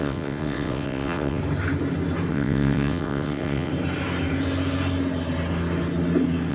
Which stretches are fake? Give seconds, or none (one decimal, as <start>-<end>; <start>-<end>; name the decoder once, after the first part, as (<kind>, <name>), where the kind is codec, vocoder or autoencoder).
0.0-1.4 (vocoder, WaveNeXt); 2.3-3.7